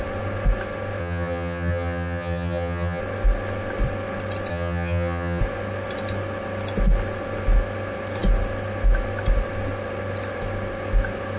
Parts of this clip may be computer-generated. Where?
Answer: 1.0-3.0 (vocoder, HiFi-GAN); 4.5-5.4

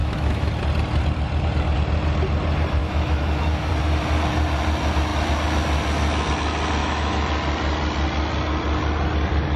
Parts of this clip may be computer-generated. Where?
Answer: 0.0-0.5 (autoencoder, DAC-VAE); 2.8-3.7; 6.8-7.3

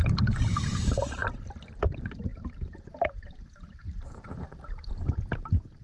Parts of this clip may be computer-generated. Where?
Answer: none

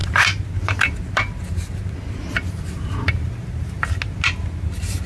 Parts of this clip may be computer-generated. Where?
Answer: none

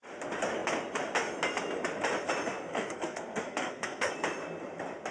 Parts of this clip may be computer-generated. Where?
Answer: 2.7-4.1 (codec, SNAC)

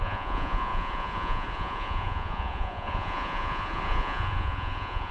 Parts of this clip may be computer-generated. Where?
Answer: 0.0-5.1 (vocoder, Vocos)